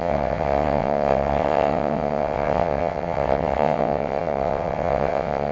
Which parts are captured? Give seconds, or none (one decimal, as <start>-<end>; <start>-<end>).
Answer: none